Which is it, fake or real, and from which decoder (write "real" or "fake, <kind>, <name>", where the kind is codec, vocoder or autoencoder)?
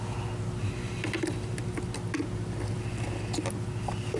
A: real